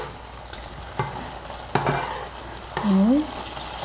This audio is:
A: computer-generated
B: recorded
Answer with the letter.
B